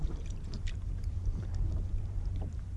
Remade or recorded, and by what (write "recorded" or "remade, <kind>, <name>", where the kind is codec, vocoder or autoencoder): remade, vocoder, BigVGAN v2